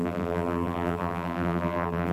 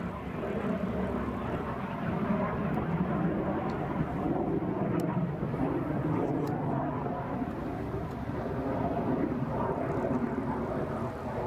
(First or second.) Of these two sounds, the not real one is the first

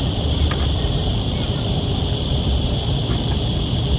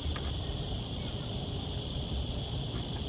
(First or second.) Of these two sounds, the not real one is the second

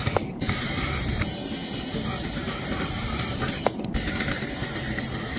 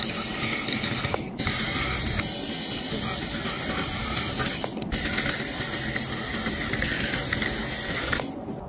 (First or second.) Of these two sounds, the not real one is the first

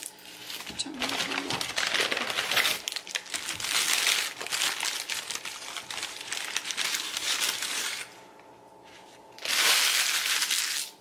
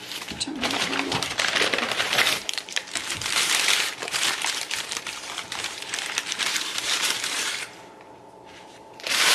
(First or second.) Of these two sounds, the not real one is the second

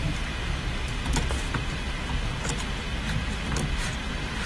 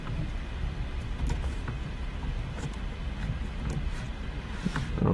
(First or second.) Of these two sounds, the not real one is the second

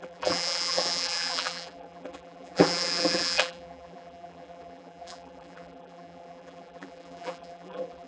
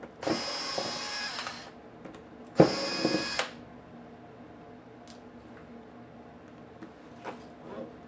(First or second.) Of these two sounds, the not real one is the first